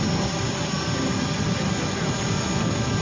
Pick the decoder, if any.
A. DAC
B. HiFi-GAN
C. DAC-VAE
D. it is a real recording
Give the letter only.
D